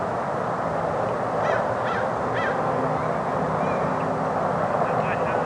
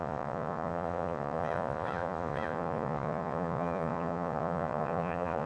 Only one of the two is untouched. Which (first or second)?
first